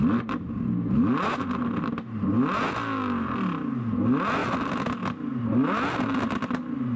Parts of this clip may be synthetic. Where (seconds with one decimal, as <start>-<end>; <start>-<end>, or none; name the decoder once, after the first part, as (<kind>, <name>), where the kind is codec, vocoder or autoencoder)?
none